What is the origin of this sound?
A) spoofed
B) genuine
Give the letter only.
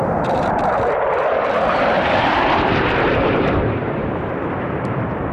A